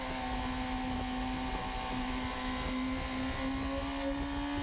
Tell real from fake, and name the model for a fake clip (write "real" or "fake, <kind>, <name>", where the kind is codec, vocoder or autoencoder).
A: real